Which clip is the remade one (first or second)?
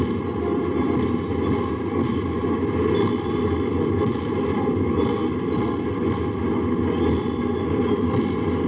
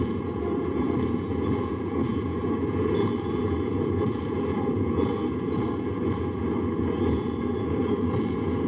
second